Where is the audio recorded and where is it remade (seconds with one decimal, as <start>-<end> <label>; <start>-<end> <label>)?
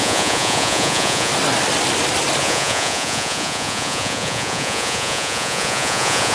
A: 0.0-1.3 remade; 1.3-2.4 recorded; 2.4-6.3 remade